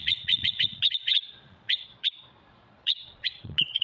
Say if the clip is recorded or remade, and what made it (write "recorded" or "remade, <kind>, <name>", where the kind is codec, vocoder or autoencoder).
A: remade, vocoder, Vocos